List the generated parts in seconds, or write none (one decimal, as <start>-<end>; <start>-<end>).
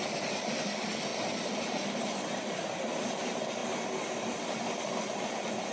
none